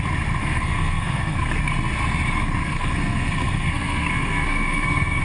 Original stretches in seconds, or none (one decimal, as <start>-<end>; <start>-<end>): 0.0-0.4; 1.6-2.6